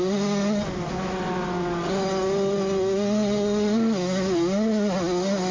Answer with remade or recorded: recorded